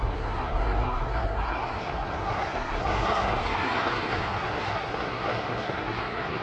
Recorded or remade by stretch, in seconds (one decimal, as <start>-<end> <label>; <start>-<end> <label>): 0.0-6.4 remade